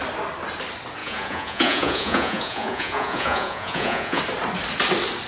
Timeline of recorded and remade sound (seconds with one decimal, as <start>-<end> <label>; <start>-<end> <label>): 0.0-1.0 recorded; 1.0-4.2 remade; 4.2-5.3 recorded

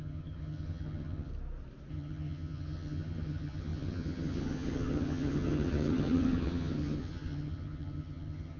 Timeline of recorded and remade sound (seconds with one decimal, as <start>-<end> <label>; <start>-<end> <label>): 0.0-1.3 remade; 1.3-1.9 recorded; 1.9-8.6 remade

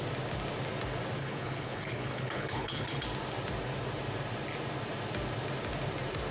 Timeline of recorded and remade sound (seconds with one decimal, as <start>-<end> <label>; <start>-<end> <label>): 0.0-1.2 recorded; 1.2-3.0 remade; 3.0-6.3 recorded

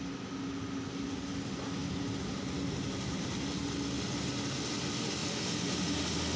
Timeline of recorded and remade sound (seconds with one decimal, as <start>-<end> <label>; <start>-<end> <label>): 0.0-6.4 recorded

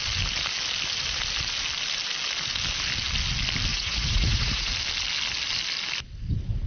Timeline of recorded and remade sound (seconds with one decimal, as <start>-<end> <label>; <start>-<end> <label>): 0.0-3.7 recorded; 3.7-4.7 remade; 4.7-6.7 recorded

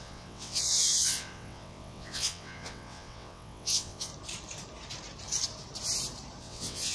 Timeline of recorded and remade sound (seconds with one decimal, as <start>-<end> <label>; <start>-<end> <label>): 0.0-4.1 remade; 4.1-6.4 recorded; 6.4-6.9 remade

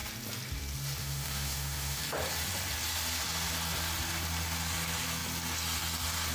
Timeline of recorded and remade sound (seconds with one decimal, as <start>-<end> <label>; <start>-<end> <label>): 0.0-1.0 recorded; 1.0-2.0 remade; 2.0-6.3 recorded

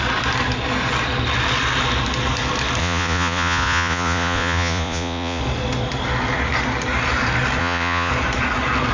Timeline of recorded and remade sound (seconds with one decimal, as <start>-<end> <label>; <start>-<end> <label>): 0.0-2.8 recorded; 2.8-5.4 remade; 5.4-7.6 recorded; 7.6-8.1 remade; 8.1-8.9 recorded